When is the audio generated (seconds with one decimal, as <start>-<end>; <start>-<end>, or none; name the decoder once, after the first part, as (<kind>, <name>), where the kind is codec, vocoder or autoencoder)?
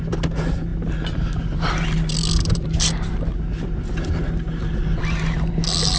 none